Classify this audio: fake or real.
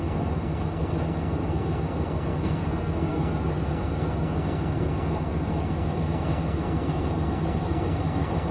fake